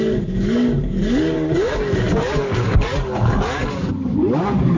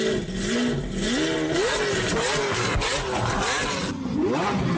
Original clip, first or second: second